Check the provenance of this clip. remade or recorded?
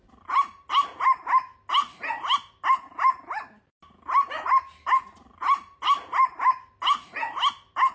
recorded